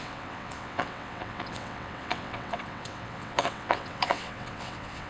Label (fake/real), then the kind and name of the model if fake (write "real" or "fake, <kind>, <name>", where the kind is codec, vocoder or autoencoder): fake, vocoder, WaveNeXt